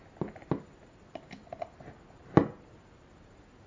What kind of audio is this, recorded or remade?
recorded